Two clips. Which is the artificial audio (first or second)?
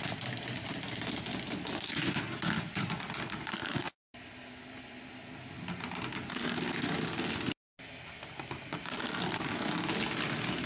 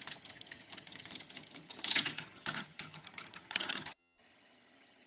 second